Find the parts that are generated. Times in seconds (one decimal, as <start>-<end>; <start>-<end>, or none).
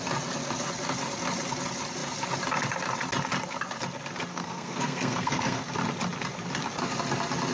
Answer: 4.3-5.6